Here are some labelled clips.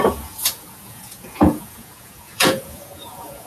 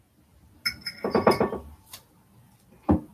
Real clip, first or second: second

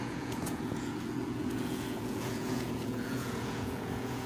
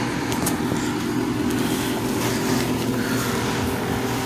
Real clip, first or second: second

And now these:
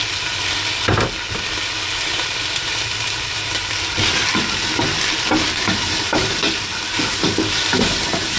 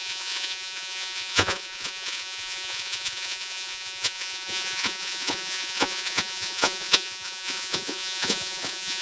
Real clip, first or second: first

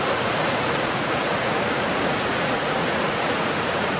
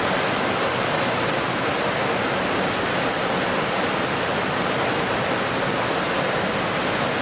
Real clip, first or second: second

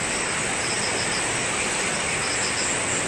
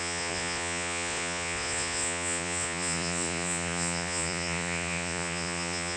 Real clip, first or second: first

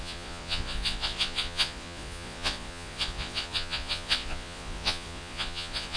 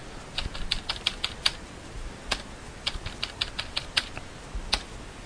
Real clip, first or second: second